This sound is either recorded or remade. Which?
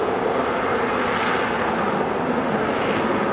recorded